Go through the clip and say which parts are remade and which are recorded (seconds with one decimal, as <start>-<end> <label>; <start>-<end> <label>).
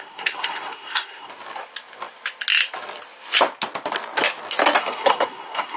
0.0-1.3 remade; 1.3-4.8 recorded; 4.8-5.8 remade